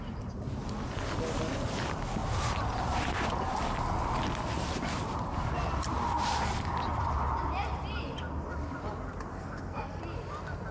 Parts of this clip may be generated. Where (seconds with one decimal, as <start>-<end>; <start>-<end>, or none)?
9.3-10.0